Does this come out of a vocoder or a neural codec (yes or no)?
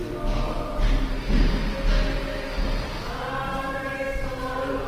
no